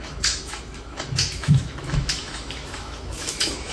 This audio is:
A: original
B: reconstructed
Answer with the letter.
B